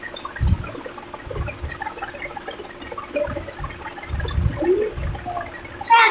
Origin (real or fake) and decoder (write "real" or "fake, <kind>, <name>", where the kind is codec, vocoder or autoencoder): real